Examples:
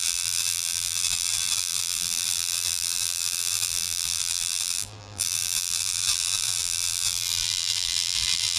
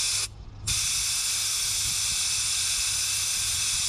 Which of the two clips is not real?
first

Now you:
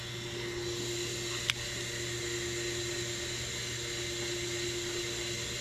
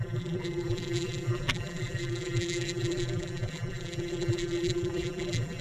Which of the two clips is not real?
second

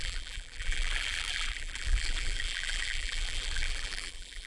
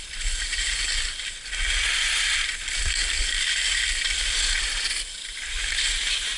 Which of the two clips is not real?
first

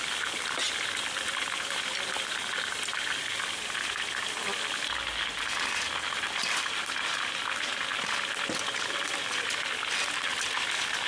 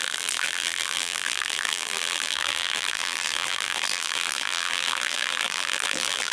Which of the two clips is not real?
second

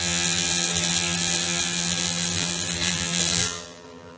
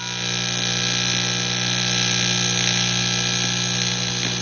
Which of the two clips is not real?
first